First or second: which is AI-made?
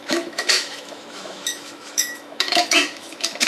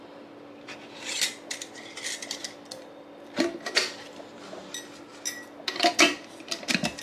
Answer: first